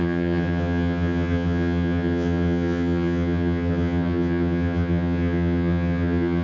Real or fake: fake